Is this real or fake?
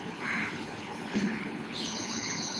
fake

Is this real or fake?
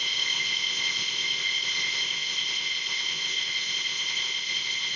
fake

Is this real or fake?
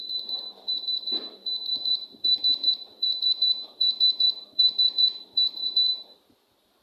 fake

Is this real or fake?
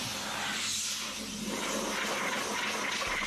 real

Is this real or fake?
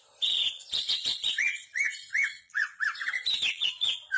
fake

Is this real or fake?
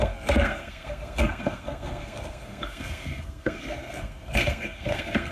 fake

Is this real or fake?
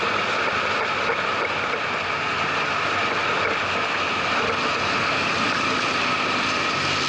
real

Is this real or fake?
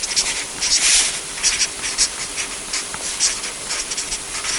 real